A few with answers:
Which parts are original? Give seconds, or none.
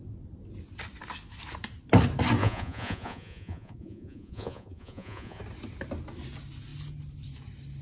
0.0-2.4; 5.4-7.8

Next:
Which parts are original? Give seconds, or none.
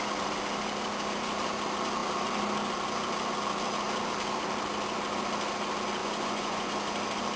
0.0-6.0; 6.7-7.4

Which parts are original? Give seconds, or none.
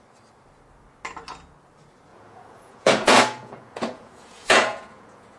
0.0-2.1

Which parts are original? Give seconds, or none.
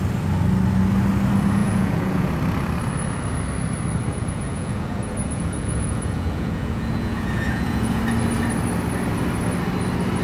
0.0-1.6; 2.3-4.1; 8.0-10.2